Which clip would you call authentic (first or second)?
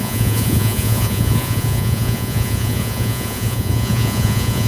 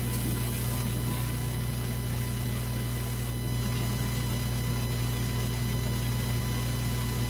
second